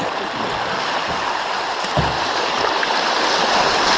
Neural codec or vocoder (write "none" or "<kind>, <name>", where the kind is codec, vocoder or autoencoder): none